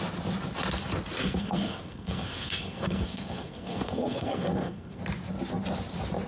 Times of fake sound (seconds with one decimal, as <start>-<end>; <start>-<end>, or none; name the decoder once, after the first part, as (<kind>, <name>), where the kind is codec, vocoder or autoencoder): 1.2-5.0 (codec, SNAC)